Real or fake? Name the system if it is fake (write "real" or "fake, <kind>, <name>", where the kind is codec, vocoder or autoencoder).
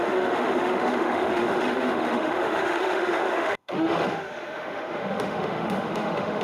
fake, autoencoder, DAC-VAE